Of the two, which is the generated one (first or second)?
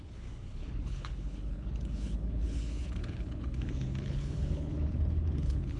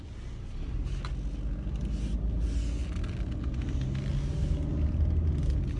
first